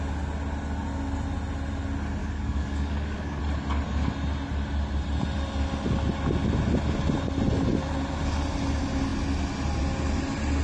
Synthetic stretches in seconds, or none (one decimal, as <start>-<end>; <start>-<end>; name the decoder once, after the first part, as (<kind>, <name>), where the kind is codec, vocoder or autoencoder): 2.2-3.4 (codec, DAC)